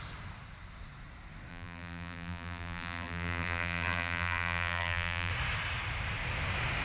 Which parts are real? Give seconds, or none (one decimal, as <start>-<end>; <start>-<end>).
0.0-1.5; 5.3-6.8